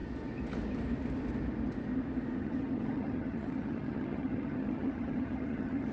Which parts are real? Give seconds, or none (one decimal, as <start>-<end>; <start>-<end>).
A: 0.0-2.4